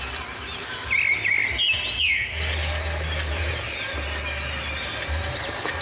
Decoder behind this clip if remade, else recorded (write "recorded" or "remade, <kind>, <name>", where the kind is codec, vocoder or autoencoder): recorded